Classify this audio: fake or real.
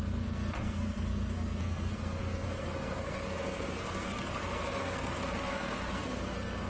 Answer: fake